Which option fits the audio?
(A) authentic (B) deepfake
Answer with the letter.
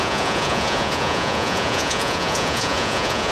B